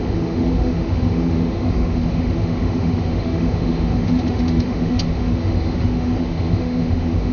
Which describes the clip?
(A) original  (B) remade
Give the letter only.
B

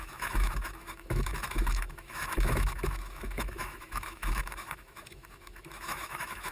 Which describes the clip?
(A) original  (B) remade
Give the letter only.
B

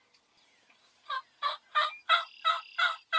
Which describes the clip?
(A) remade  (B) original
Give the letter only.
B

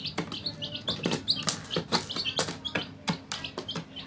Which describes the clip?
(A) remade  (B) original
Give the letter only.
B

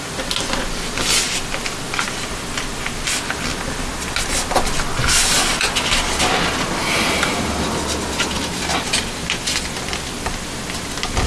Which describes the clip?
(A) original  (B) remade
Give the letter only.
A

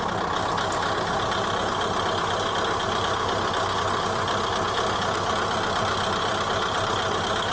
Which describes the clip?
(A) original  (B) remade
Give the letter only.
A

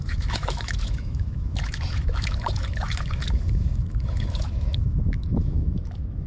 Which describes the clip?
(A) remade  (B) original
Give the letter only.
A